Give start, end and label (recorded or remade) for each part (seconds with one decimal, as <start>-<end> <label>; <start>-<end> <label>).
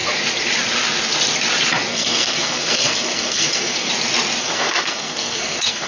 0.0-1.9 recorded; 1.9-3.9 remade; 3.9-4.4 recorded; 4.4-5.9 remade